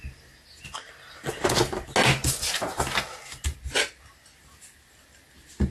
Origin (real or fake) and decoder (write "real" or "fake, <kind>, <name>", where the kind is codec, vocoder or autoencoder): real